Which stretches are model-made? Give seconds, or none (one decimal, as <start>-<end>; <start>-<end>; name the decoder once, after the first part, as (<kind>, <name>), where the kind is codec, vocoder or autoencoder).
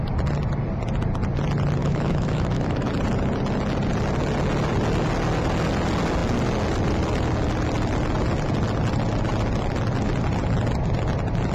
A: 1.8-2.9 (autoencoder, DAC-VAE)